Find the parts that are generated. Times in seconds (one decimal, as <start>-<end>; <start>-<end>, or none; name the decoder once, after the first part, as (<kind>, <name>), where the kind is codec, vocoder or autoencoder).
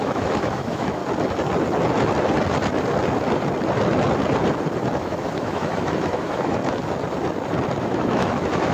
0.0-1.0 (autoencoder, DAC-VAE); 5.0-6.6; 7.8-8.7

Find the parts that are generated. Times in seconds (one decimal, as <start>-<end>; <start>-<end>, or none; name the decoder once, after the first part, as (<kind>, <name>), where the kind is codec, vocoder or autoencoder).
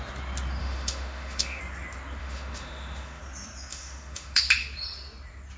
0.6-1.6 (autoencoder, DAC-VAE); 2.2-3.2; 3.7-4.4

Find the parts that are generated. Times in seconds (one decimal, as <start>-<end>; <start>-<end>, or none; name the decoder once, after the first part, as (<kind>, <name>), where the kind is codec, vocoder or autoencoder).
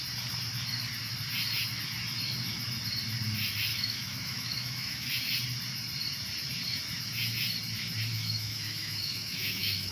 3.7-5.1 (autoencoder, DAC-VAE); 8.1-9.9